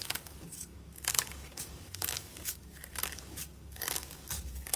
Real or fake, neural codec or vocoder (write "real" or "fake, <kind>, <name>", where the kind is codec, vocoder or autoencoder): fake, codec, DAC